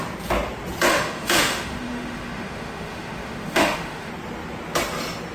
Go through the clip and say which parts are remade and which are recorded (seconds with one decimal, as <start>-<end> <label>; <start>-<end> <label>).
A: 0.0-0.9 recorded; 0.9-4.1 remade; 4.1-5.3 recorded